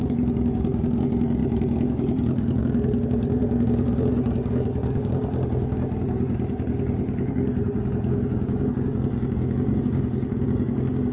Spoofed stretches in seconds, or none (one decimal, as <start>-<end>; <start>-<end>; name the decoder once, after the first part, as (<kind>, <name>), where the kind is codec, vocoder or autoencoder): 0.0-11.1 (codec, DAC)